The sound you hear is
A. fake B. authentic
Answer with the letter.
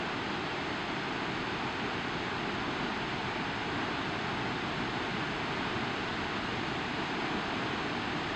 B